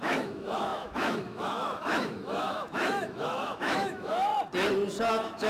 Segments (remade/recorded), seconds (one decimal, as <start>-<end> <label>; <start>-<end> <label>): 0.0-4.3 remade; 4.3-5.1 recorded; 5.1-5.5 remade